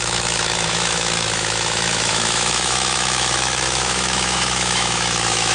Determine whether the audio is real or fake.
fake